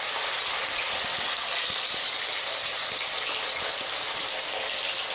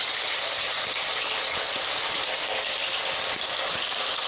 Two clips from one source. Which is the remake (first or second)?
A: second